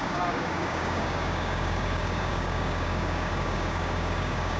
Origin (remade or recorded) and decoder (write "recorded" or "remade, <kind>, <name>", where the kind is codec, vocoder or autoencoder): remade, codec, DAC